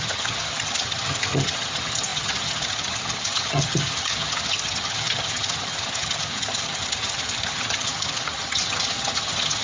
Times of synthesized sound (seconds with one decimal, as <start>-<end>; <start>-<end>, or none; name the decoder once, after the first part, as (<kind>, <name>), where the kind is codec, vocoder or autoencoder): 0.0-9.6 (vocoder, HiFi-GAN)